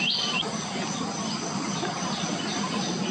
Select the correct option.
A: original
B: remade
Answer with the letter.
B